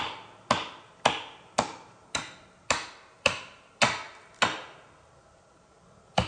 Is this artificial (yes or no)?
no